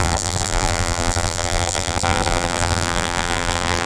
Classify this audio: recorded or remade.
remade